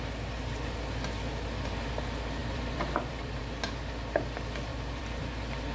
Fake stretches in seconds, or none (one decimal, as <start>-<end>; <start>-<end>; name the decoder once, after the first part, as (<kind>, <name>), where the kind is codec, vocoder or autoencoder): 2.4-3.4 (vocoder, BigVGAN v2); 4.7-5.3